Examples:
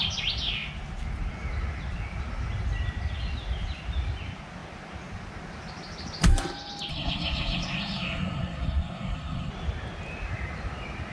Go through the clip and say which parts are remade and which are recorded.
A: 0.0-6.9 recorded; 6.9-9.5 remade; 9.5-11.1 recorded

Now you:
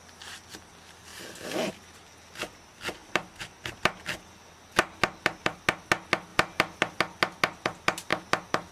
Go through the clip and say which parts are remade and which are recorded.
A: 0.0-1.1 recorded; 1.1-1.7 remade; 1.7-3.0 recorded; 3.0-3.8 remade; 3.8-8.7 recorded

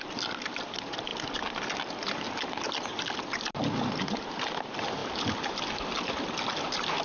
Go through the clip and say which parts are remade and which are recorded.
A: 0.0-7.0 recorded